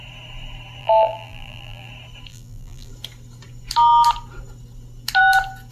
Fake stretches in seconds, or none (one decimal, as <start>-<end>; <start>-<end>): 0.8-1.9; 2.3-2.9